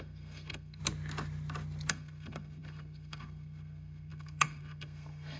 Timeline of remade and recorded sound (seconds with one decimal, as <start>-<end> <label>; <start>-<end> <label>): 0.0-0.8 remade; 0.8-1.9 recorded; 1.9-5.4 remade